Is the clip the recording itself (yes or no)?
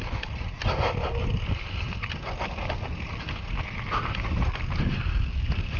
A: yes